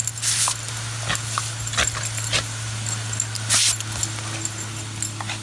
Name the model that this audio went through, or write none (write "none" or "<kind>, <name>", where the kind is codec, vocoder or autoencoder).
none